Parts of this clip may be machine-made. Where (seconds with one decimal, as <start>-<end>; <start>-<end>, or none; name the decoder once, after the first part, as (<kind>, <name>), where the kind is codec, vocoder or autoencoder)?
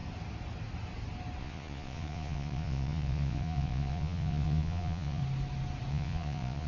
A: 1.4-5.2 (vocoder, Vocos); 5.9-6.7